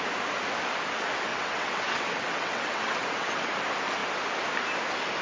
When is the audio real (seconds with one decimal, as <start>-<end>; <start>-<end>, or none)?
0.0-1.3; 3.5-5.2